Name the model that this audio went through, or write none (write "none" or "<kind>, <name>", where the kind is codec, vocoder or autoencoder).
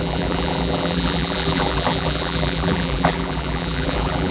vocoder, BigVGAN v2